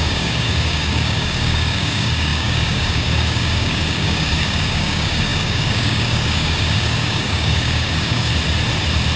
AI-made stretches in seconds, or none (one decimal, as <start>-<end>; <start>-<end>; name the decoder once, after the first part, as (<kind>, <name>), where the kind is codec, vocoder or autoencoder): 0.0-8.3 (codec, DAC)